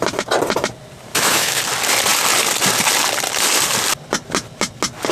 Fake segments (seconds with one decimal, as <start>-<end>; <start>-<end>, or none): 1.1-1.6